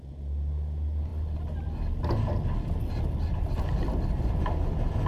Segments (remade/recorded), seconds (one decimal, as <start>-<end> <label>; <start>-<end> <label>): 0.0-5.1 recorded